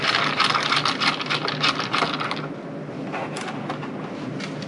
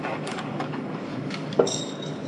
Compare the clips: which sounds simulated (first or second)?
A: second